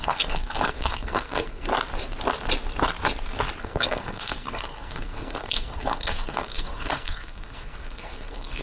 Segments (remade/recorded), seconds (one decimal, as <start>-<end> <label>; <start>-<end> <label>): 0.0-1.7 remade; 1.7-3.6 recorded; 3.6-8.6 remade